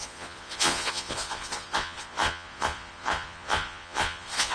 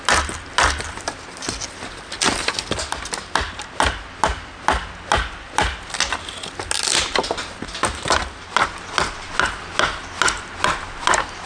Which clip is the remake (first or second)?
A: first